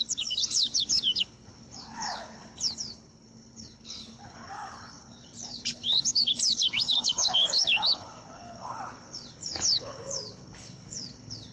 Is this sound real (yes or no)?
no